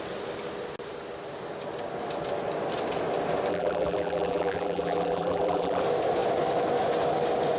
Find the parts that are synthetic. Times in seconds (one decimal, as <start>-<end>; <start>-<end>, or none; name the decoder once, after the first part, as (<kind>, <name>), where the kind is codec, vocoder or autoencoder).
3.5-5.8 (vocoder, BigVGAN v2)